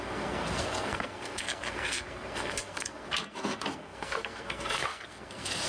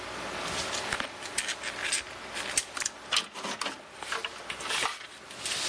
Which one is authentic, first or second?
second